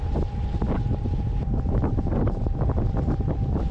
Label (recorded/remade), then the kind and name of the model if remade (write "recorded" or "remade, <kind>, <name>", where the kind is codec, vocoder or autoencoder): recorded